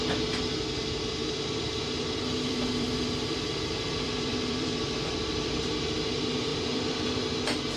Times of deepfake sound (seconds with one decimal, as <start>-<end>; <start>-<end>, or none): 1.2-5.7; 6.5-7.2